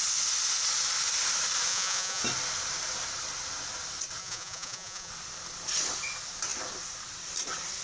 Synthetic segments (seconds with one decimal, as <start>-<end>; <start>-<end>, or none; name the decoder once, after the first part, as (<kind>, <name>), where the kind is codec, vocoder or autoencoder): 1.7-2.2 (vocoder, Vocos); 4.2-5.1